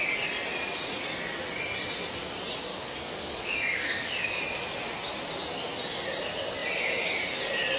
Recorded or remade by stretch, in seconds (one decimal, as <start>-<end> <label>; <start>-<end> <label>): 0.0-2.7 recorded; 2.7-4.4 remade; 4.4-7.8 recorded